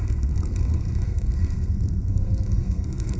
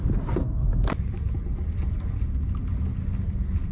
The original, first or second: second